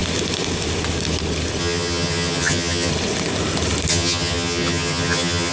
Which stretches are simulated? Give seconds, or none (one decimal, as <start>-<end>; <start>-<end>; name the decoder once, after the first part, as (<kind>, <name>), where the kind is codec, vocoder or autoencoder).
1.6-2.9 (vocoder, HiFi-GAN); 3.9-5.5